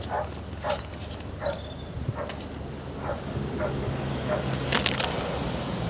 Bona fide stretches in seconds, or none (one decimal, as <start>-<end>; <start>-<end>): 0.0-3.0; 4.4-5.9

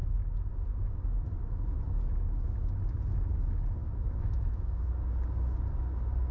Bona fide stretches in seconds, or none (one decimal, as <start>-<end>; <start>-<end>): 0.0-3.8; 4.9-6.3

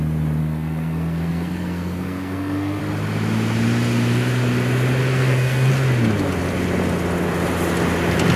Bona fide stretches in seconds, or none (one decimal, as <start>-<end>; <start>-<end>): 0.0-0.4; 2.8-5.0; 5.7-8.4